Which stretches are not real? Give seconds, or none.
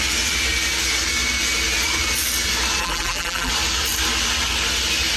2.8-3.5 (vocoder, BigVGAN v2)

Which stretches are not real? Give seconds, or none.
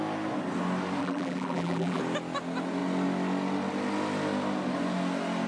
1.0-2.0 (vocoder, BigVGAN v2)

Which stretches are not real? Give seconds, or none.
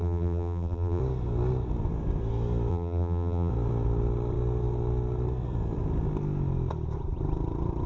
0.0-1.0 (vocoder, BigVGAN v2); 2.7-3.5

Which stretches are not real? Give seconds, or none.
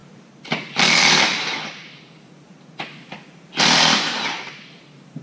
0.0-2.0 (vocoder, BigVGAN v2)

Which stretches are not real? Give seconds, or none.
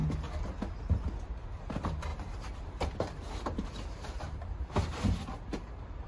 1.2-6.1 (vocoder, BigVGAN v2)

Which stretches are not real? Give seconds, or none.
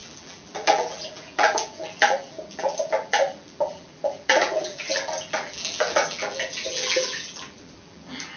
0.0-8.4 (vocoder, BigVGAN v2)